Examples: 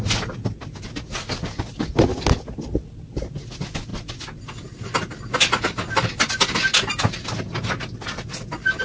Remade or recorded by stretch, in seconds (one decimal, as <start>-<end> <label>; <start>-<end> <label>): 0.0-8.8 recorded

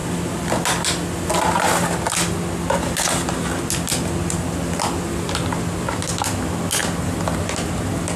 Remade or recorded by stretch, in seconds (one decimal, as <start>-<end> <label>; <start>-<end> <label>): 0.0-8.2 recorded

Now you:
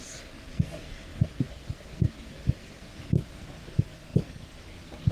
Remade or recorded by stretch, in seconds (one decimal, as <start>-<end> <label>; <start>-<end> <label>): 0.0-5.1 remade

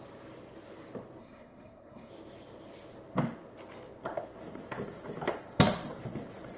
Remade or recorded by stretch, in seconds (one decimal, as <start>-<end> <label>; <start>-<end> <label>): 0.0-1.2 recorded; 1.2-2.1 remade; 2.1-6.6 recorded

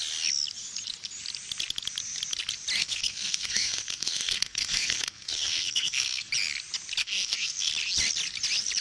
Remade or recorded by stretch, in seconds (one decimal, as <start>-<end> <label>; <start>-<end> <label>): 0.0-2.8 recorded; 2.8-6.3 remade; 6.3-7.0 recorded; 7.0-7.7 remade; 7.7-8.8 recorded

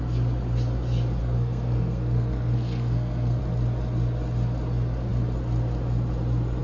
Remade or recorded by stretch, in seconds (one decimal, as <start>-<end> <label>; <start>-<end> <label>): 0.0-1.2 recorded; 1.2-3.4 remade; 3.4-6.6 recorded

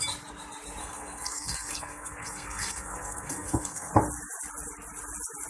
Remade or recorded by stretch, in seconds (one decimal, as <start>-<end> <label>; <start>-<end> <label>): 0.0-0.8 recorded; 0.8-3.9 remade; 3.9-5.5 recorded

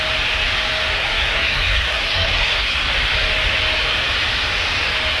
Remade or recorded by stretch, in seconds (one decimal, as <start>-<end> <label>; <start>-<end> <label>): 0.0-0.9 recorded; 0.9-2.9 remade; 2.9-5.2 recorded